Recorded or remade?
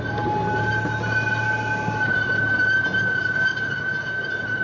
recorded